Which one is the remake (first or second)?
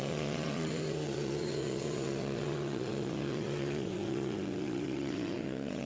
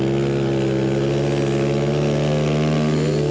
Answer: first